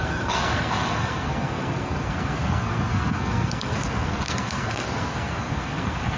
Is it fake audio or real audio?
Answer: fake